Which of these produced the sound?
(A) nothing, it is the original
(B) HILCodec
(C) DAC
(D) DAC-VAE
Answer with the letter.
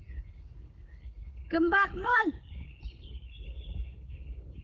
B